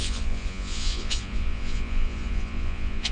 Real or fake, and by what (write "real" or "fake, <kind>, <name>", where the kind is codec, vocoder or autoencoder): fake, vocoder, Vocos